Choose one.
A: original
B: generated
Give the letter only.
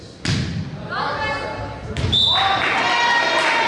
A